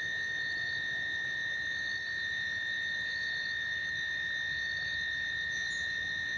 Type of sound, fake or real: real